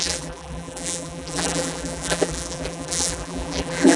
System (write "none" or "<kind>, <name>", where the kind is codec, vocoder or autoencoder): vocoder, BigVGAN v2